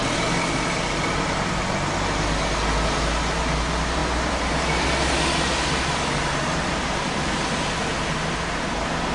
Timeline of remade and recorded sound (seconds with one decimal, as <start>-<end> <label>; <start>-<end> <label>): 0.0-4.0 recorded; 4.0-4.5 remade; 4.5-9.1 recorded